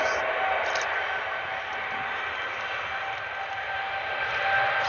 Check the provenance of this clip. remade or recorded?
recorded